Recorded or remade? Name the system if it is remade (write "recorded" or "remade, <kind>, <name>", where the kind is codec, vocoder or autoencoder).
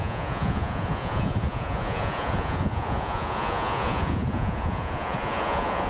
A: remade, vocoder, Vocos